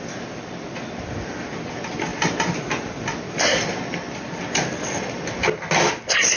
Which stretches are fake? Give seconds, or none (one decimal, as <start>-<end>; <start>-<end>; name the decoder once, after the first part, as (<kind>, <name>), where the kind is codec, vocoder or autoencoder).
none